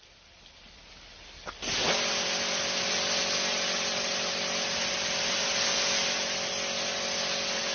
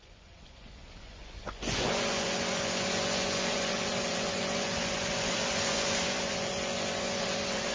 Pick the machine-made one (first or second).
second